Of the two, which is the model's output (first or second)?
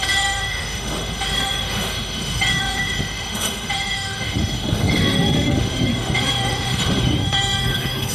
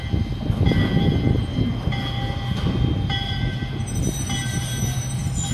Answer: first